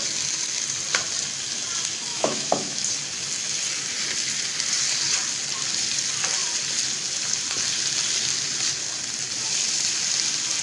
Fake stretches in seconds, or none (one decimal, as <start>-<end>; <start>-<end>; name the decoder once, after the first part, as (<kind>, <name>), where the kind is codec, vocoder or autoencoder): 2.1-2.9 (autoencoder, DAC-VAE)